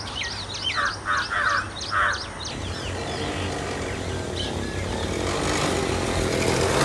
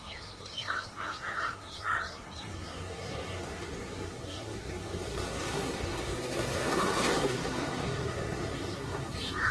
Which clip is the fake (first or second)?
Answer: second